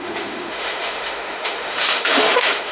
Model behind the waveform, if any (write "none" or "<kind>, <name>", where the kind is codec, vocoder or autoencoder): autoencoder, DAC-VAE